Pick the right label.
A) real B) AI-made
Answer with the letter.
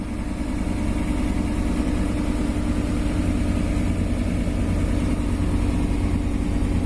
A